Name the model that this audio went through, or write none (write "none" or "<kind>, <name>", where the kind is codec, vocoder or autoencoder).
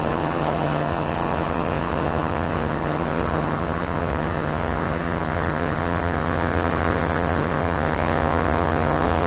vocoder, HiFi-GAN